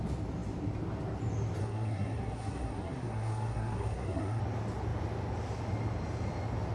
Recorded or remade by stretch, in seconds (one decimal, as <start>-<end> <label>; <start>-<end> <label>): 0.0-1.6 recorded; 1.6-4.4 remade; 4.4-6.7 recorded